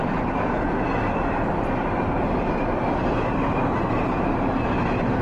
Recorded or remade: remade